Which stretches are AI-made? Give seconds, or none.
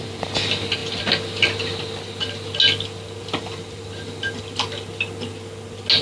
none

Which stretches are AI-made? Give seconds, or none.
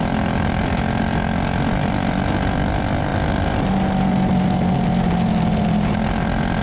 none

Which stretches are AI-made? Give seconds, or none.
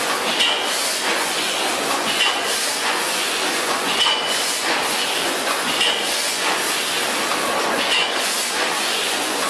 0.0-6.8 (vocoder, Vocos); 7.6-9.5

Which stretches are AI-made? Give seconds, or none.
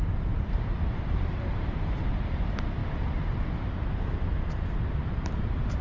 0.0-2.8 (vocoder, BigVGAN v2); 3.7-5.8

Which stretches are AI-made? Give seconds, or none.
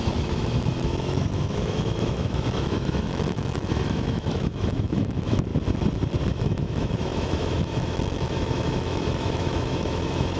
0.0-5.5 (autoencoder, DAC-VAE); 6.3-10.4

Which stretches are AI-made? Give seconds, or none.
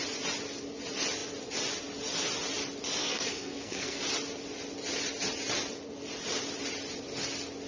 3.0-4.0 (codec, SNAC)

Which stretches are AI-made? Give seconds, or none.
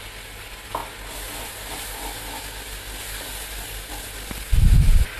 none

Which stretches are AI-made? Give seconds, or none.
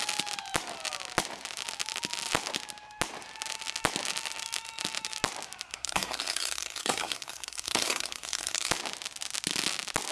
5.7-8.7 (codec, SNAC)